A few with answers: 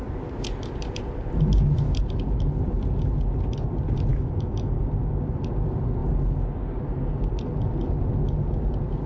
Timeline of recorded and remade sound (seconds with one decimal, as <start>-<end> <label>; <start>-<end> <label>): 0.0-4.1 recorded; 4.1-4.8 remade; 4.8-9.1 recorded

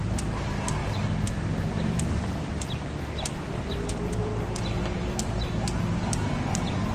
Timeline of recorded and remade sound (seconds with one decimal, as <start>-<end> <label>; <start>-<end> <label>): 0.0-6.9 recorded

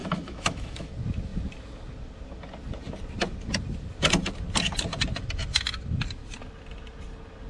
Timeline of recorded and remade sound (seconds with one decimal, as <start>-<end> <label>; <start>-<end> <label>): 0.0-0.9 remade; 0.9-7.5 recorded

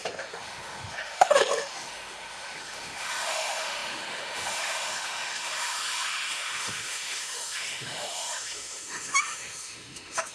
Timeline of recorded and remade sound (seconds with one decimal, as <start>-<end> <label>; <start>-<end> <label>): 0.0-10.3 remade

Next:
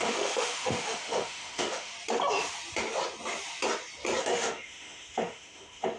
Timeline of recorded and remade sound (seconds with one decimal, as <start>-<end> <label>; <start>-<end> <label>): 0.0-1.9 remade; 1.9-4.2 recorded; 4.2-6.0 remade